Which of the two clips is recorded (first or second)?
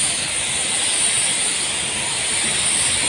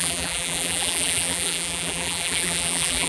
first